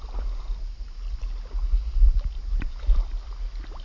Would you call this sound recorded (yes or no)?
yes